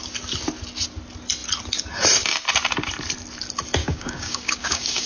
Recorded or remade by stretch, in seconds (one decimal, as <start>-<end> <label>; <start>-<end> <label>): 0.0-3.8 recorded; 3.8-5.1 remade